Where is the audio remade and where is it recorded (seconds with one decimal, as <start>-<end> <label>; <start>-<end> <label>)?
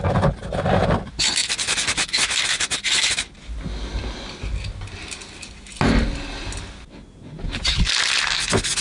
0.0-8.8 recorded